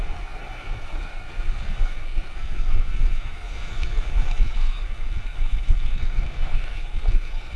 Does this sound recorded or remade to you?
remade